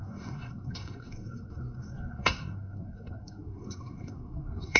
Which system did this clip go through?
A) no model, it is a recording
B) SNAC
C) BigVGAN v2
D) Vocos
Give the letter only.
B